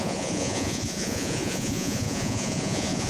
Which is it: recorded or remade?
remade